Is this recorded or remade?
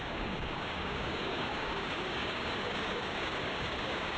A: remade